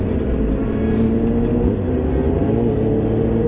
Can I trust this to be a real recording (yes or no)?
yes